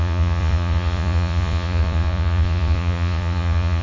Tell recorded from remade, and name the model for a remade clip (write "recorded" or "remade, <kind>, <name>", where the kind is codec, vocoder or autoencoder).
remade, vocoder, Vocos